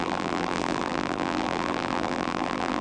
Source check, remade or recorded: remade